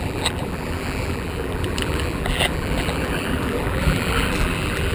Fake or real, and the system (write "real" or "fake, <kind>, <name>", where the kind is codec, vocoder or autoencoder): fake, vocoder, BigVGAN v2